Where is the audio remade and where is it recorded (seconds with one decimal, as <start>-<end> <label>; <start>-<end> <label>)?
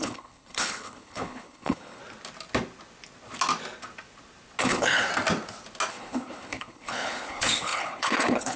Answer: 0.0-2.0 remade; 2.0-4.6 recorded; 4.6-5.1 remade; 5.1-5.9 recorded; 5.9-8.6 remade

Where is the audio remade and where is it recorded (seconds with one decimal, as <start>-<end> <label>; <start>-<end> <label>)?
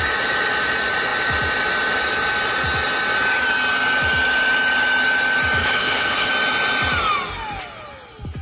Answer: 0.0-5.6 recorded; 5.6-6.3 remade; 6.3-8.4 recorded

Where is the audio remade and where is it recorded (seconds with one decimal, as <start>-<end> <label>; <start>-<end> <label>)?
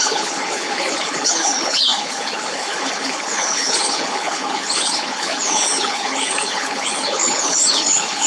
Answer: 0.0-8.3 remade